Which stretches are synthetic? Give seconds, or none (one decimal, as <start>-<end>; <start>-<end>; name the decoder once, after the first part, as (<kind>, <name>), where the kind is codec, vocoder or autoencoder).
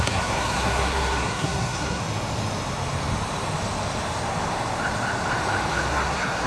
0.0-2.0 (codec, SNAC); 5.9-6.5